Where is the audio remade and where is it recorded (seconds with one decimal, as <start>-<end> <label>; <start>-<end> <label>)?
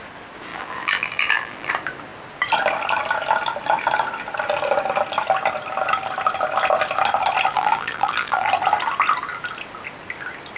0.0-0.5 recorded; 0.5-1.7 remade; 1.7-7.5 recorded; 7.5-8.5 remade; 8.5-10.6 recorded